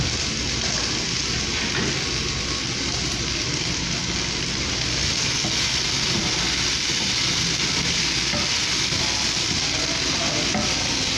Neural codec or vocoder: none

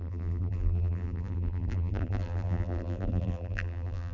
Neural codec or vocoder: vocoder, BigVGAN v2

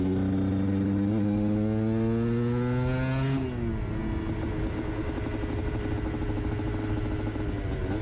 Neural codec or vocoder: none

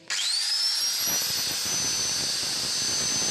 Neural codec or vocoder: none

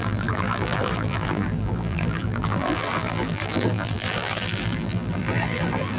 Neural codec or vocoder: vocoder, BigVGAN v2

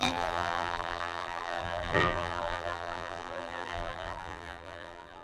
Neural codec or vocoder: vocoder, BigVGAN v2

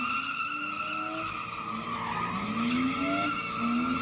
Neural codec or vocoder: none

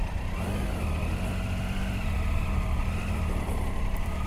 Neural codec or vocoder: vocoder, BigVGAN v2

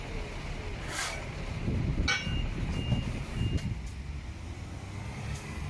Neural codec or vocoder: none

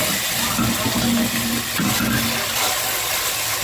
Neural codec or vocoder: none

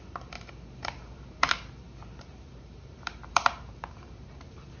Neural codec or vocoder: vocoder, BigVGAN v2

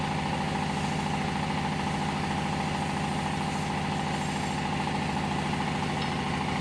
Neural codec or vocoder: none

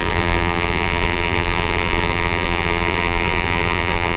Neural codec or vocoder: vocoder, BigVGAN v2